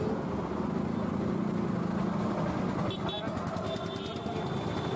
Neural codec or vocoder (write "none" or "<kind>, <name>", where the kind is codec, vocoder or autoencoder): none